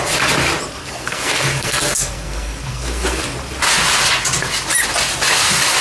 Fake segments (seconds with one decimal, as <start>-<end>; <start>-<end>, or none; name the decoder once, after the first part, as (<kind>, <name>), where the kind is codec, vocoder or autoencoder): 0.8-3.2 (codec, SNAC)